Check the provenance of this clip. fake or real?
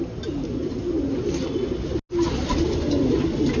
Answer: real